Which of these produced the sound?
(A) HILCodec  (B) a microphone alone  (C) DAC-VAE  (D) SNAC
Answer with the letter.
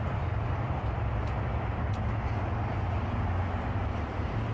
B